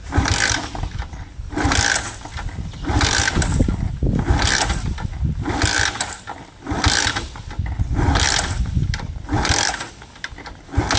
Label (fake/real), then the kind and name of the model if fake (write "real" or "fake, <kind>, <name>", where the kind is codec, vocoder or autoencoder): real